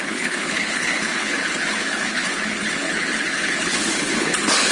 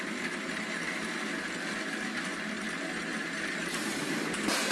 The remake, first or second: first